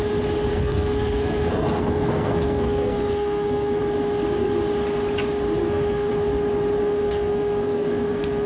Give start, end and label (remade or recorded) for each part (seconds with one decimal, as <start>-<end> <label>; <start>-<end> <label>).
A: 0.0-0.5 recorded; 0.5-3.8 remade; 3.8-5.6 recorded; 5.6-6.1 remade; 6.1-6.8 recorded; 6.8-8.5 remade